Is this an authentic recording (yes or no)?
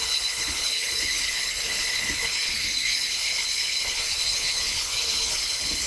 no